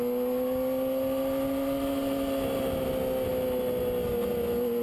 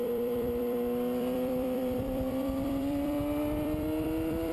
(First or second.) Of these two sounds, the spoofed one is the second